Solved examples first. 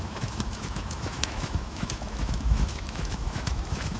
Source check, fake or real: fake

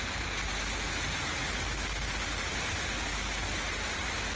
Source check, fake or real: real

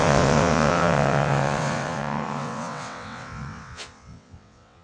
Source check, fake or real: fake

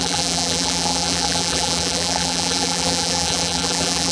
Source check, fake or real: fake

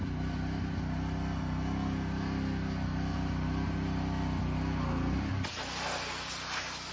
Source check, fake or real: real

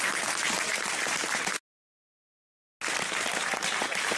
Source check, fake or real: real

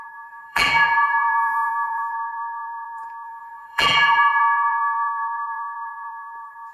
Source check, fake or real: fake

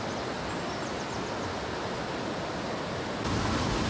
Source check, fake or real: real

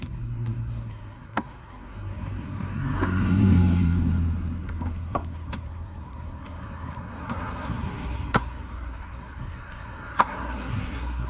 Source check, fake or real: fake